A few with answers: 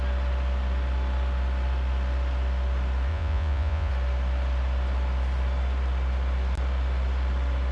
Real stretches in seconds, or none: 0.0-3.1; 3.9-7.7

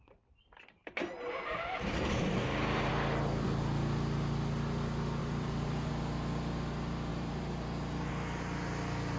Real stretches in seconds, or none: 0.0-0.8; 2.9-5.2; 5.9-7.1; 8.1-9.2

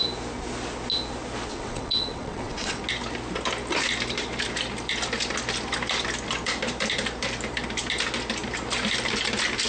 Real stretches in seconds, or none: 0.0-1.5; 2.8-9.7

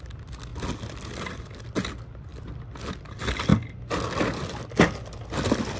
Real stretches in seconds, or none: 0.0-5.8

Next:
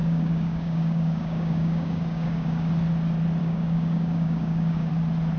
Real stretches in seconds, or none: 2.7-3.4; 4.9-5.4

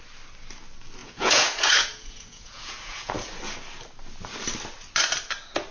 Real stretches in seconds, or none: 0.0-1.0; 3.3-5.7

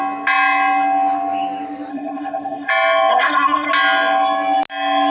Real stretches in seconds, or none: 0.0-1.9; 2.7-3.1; 3.7-5.1